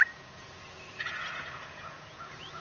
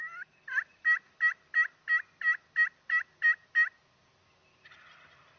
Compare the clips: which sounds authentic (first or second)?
second